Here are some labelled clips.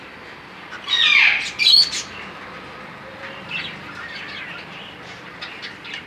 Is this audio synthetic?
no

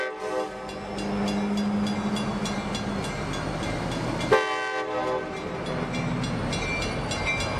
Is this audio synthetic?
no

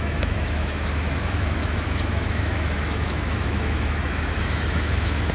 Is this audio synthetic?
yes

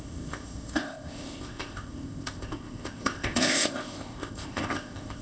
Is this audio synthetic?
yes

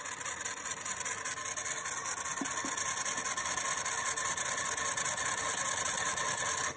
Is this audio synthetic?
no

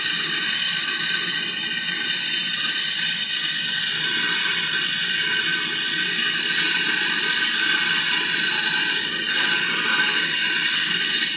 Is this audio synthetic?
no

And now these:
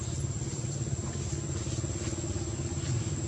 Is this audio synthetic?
no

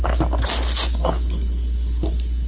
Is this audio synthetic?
no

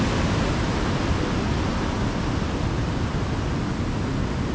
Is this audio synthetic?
no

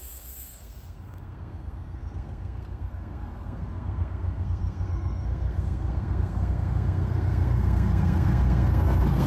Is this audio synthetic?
yes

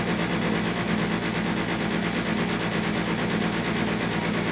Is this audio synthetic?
no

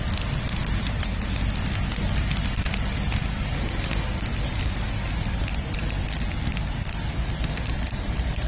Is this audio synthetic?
no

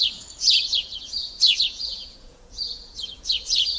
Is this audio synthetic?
yes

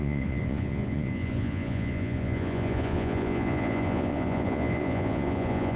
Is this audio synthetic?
yes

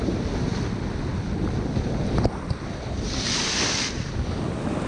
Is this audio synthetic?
no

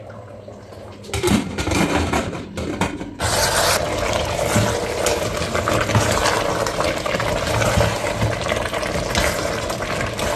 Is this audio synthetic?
no